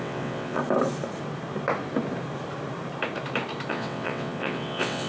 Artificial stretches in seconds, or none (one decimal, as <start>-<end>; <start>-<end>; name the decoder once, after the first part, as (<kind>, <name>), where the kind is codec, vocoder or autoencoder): 0.0-0.6 (vocoder, WaveNeXt); 3.7-5.1